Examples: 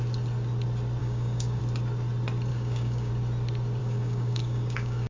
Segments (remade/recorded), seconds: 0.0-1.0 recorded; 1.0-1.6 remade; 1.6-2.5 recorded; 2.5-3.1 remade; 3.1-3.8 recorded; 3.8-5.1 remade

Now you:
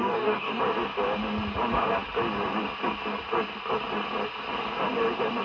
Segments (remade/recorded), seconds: 0.0-0.6 remade; 0.6-5.4 recorded

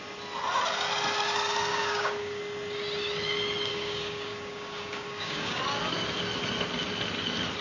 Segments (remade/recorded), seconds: 0.0-1.7 recorded; 1.7-2.4 remade; 2.4-3.7 recorded; 3.7-5.6 remade; 5.6-7.6 recorded

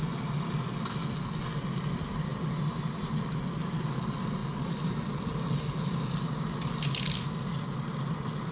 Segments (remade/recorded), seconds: 0.0-8.5 recorded

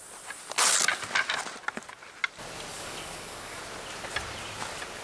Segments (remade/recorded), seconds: 0.0-2.7 recorded; 2.7-3.6 remade; 3.6-5.0 recorded

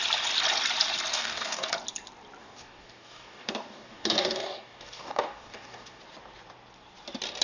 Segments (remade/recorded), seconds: 0.0-1.1 recorded; 1.1-1.7 remade; 1.7-2.4 recorded; 2.4-6.0 remade; 6.0-7.4 recorded

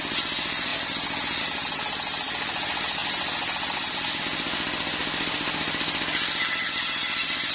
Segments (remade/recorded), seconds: 0.0-7.5 recorded